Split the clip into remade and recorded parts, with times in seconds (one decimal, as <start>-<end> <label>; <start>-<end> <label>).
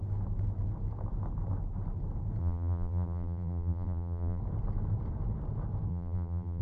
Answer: 0.0-2.4 recorded; 2.4-4.4 remade; 4.4-5.9 recorded; 5.9-6.6 remade